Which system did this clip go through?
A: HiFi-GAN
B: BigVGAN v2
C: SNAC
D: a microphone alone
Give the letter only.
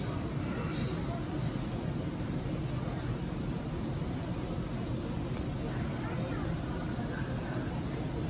D